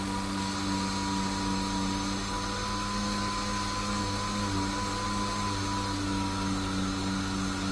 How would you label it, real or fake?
real